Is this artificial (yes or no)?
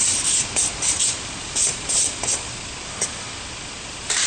yes